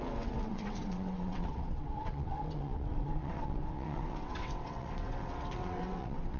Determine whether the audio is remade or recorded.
remade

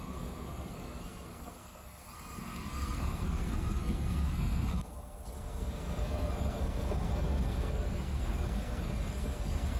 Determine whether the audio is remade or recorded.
remade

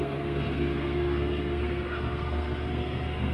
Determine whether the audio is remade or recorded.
remade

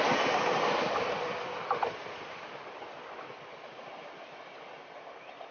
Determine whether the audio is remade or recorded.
recorded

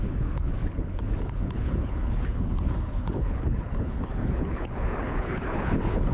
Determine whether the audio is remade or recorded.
remade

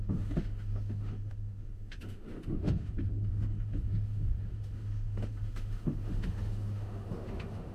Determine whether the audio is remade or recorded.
remade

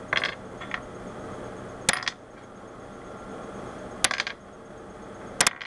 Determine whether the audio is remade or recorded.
recorded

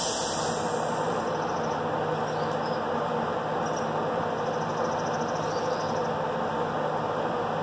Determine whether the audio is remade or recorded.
recorded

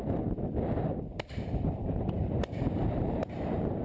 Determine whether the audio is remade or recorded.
remade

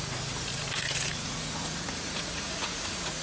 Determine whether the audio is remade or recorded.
remade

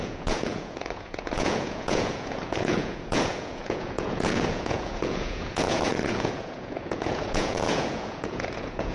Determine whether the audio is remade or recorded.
remade